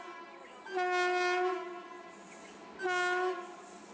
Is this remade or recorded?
recorded